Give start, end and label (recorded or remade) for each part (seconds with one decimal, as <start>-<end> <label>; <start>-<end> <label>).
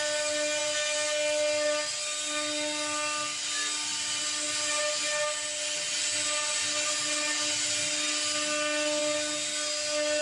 0.0-10.2 recorded